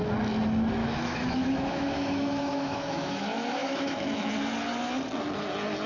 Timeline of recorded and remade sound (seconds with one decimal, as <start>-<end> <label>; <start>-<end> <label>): 0.0-0.8 recorded; 0.8-4.3 remade; 4.3-5.9 recorded